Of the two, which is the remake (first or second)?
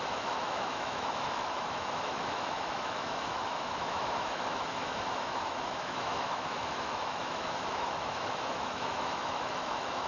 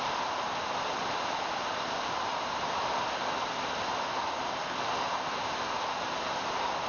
first